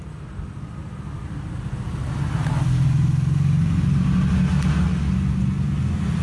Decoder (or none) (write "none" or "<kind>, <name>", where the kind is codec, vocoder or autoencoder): none